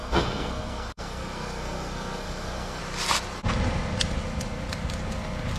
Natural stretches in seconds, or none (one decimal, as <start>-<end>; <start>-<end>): 2.8-5.6